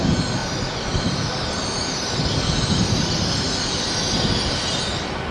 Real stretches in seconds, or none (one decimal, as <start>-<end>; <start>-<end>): 0.0-5.3